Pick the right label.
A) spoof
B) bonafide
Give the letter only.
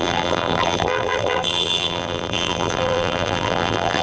A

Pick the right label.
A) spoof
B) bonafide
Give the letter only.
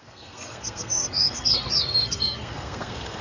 A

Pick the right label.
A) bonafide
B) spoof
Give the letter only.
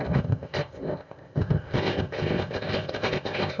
B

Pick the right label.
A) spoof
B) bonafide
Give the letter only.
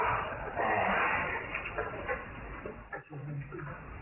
B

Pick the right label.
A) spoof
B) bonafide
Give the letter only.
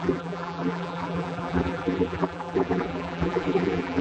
A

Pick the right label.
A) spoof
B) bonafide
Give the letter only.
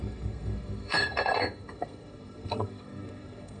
A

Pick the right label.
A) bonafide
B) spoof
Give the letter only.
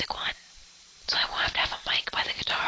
B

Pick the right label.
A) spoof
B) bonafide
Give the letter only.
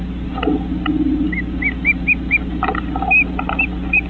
B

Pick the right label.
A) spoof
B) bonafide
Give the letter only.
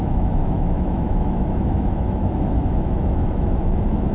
A